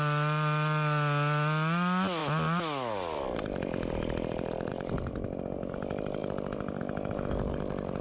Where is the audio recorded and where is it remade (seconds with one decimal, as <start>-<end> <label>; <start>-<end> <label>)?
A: 0.0-8.0 recorded